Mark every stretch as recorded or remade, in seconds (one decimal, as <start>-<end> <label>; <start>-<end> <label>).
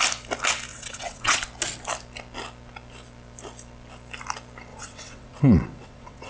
0.0-0.7 recorded; 0.7-1.4 remade; 1.4-4.7 recorded; 4.7-6.3 remade